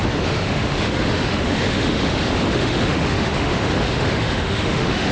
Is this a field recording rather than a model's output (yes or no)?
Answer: no